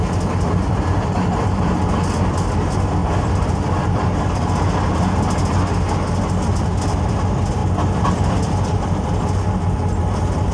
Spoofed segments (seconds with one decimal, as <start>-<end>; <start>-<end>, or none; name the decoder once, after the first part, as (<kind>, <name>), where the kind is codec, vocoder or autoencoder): 3.0-3.8 (vocoder, BigVGAN v2)